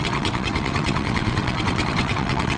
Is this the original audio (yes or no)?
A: no